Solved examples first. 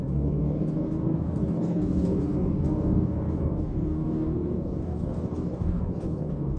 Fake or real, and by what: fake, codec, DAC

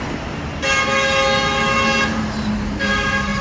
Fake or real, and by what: real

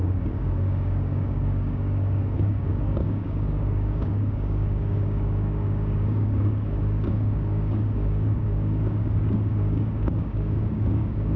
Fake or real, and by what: fake, codec, DAC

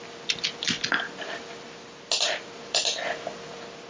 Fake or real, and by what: real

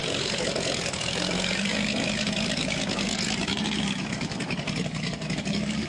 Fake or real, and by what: fake, codec, DAC